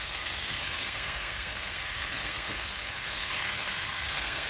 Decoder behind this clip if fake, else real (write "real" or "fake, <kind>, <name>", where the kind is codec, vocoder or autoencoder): fake, codec, SNAC